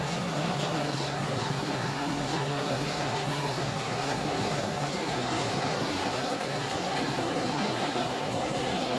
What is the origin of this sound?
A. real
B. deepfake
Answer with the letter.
B